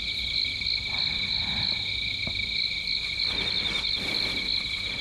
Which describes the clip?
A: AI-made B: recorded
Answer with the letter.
B